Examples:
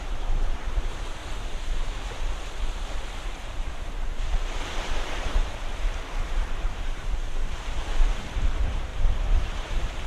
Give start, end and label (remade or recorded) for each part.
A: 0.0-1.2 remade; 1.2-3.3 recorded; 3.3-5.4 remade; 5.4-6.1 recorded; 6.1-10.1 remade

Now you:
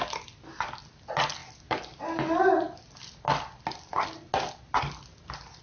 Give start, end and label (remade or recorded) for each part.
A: 0.0-5.6 recorded